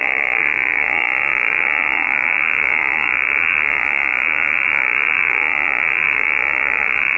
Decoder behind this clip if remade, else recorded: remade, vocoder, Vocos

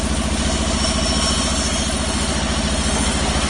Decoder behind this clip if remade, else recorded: recorded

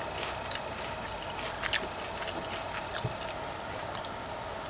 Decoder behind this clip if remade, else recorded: recorded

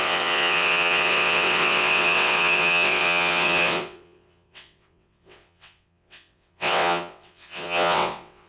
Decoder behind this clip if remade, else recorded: remade, vocoder, WaveNeXt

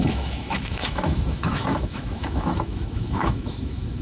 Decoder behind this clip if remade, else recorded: remade, autoencoder, DAC-VAE